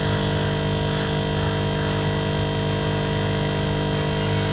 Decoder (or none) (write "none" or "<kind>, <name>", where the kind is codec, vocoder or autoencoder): none